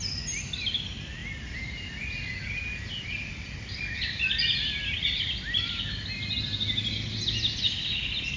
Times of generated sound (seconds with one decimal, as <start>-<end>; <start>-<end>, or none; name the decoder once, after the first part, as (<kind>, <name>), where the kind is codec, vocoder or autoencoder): none